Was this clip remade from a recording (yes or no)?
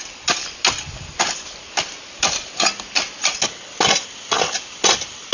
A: no